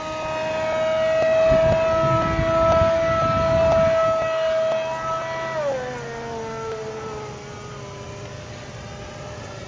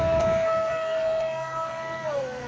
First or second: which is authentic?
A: first